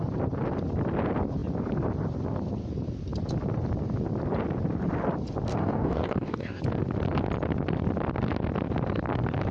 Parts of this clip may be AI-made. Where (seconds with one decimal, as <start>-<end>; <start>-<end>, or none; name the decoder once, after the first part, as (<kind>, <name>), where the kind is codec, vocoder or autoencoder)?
5.5-6.6 (codec, DAC)